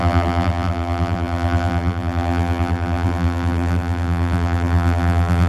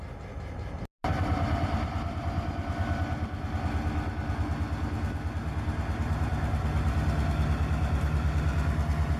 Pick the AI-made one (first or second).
first